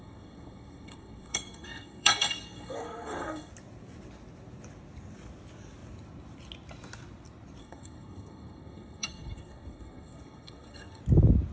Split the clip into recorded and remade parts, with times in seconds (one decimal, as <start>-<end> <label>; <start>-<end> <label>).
0.0-3.5 remade; 3.5-7.6 recorded; 7.6-11.0 remade; 11.0-11.5 recorded